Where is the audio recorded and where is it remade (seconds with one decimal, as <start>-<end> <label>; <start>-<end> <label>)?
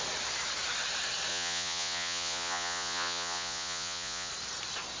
0.0-1.3 recorded; 1.3-4.3 remade; 4.3-5.0 recorded